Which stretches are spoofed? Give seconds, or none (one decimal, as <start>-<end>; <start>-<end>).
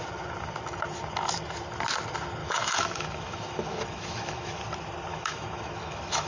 2.4-4.6; 5.1-6.3